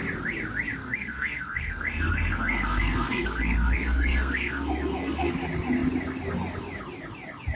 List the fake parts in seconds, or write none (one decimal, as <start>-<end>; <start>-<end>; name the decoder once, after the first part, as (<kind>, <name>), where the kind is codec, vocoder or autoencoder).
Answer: 0.8-5.3 (codec, SNAC)